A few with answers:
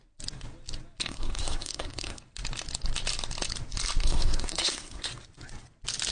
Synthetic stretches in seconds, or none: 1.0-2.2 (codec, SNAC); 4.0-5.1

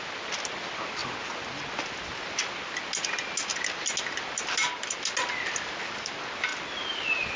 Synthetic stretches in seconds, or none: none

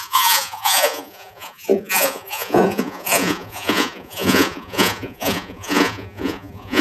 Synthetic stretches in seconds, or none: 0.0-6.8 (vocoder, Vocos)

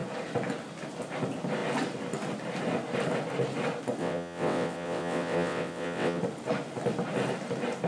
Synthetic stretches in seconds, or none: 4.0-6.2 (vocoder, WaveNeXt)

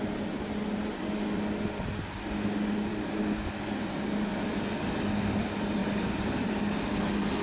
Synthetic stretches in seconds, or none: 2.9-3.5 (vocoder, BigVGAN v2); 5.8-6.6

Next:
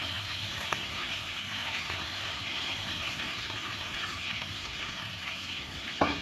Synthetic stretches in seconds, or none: 0.0-6.2 (codec, SNAC)